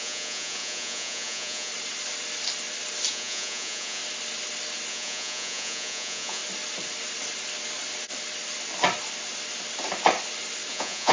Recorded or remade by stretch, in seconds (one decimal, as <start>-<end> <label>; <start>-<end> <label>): 0.0-1.7 remade; 1.7-3.1 recorded; 3.1-4.0 remade; 4.0-4.9 recorded; 4.9-6.4 remade; 6.4-10.7 recorded; 10.7-11.1 remade

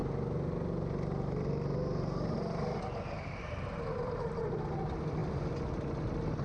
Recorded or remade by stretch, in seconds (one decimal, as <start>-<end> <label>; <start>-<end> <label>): 0.0-6.4 recorded

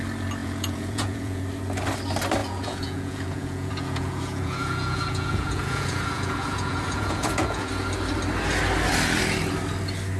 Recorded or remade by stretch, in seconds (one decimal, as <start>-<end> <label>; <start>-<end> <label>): 0.0-0.4 recorded; 0.4-1.4 remade; 1.4-2.4 recorded; 2.4-7.7 remade; 7.7-10.2 recorded

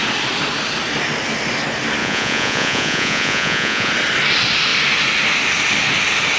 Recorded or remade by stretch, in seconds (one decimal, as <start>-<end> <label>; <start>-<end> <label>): 0.0-2.0 recorded; 2.0-3.9 remade; 3.9-6.4 recorded

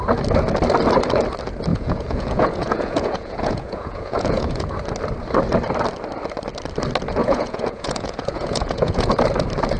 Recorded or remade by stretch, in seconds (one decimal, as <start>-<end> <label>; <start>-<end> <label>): 0.0-1.7 recorded; 1.7-4.7 remade; 4.7-7.2 recorded; 7.2-9.2 remade; 9.2-9.8 recorded

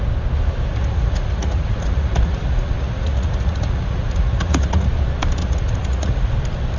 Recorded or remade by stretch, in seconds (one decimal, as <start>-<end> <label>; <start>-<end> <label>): 0.0-0.8 recorded; 0.8-4.9 remade; 4.9-5.4 recorded; 5.4-6.3 remade; 6.3-6.8 recorded

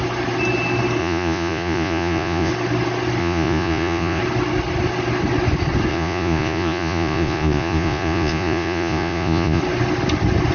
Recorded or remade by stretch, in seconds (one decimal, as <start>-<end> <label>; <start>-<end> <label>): 0.0-1.0 recorded; 1.0-2.5 remade; 2.5-3.2 recorded; 3.2-4.2 remade; 4.2-5.9 recorded; 5.9-9.6 remade; 9.6-10.5 recorded